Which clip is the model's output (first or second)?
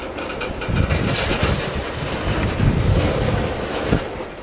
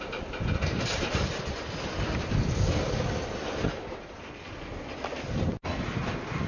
second